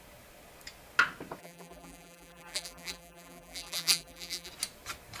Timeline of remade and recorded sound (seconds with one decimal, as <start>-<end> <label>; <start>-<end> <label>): 0.0-1.4 recorded; 1.4-4.5 remade; 4.5-5.2 recorded